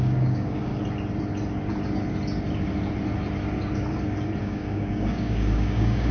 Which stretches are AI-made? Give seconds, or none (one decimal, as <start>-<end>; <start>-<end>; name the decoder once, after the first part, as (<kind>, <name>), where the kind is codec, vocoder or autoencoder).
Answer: 0.0-0.7 (codec, DAC); 4.4-6.1